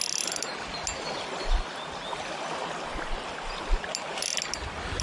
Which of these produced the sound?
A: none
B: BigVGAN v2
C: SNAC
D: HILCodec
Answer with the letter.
A